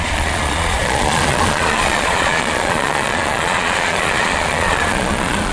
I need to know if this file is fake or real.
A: fake